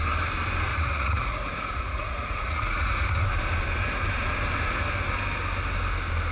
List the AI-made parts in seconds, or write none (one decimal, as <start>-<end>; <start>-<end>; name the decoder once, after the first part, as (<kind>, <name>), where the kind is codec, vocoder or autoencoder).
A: 0.7-3.1 (vocoder, Vocos)